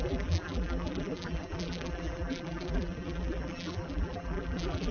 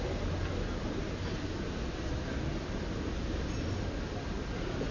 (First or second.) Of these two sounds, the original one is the second